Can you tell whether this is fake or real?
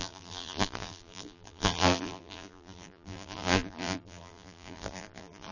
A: fake